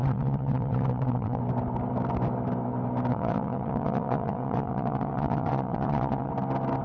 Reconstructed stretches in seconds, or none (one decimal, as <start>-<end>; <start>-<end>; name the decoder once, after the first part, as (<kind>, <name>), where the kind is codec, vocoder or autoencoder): 0.0-1.4 (vocoder, WaveNeXt); 3.1-6.3